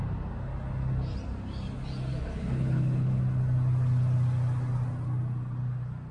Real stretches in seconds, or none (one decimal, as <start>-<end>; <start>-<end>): 0.0-2.1; 3.2-6.1